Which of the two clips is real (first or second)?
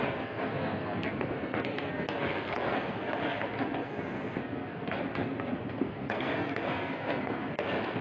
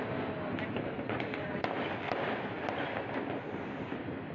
second